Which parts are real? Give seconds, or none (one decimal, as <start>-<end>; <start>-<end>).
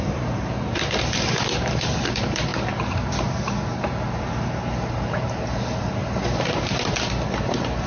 none